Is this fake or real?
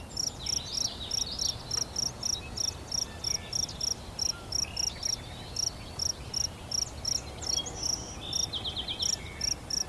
real